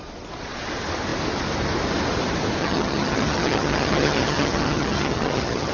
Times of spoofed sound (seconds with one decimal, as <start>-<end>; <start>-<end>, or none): 2.6-5.7